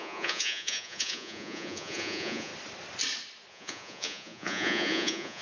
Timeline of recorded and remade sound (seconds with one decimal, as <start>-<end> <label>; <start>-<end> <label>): 0.0-2.5 remade; 2.5-3.5 recorded; 3.5-5.4 remade